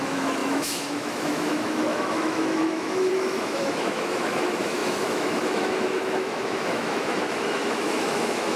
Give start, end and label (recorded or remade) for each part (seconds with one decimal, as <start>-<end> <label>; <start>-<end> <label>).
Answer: 0.0-8.6 remade